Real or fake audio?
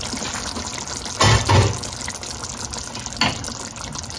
real